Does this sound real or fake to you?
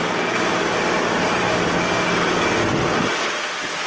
real